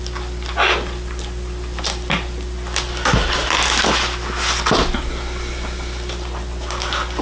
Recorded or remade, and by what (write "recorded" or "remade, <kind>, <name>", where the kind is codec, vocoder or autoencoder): recorded